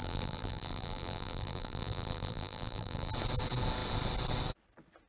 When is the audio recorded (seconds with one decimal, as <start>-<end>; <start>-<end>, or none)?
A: 3.1-5.1

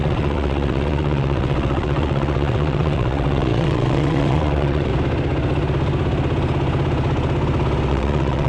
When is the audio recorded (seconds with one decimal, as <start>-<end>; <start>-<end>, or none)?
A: 4.9-7.9

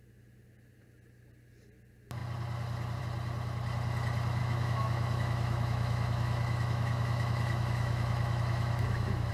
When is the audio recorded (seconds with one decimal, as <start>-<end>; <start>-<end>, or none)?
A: 0.0-4.4

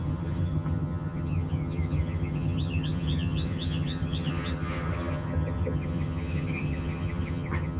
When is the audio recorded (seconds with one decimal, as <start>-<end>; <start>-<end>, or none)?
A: none

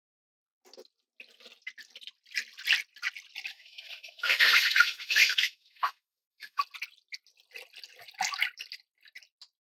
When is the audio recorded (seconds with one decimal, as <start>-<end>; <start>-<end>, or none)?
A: 0.0-3.5; 6.6-9.6

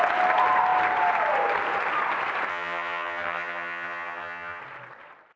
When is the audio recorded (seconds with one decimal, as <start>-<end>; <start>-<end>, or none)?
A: 0.0-2.5; 4.6-5.4

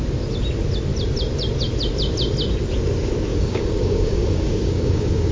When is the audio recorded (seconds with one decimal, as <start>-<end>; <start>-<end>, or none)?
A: 0.0-3.3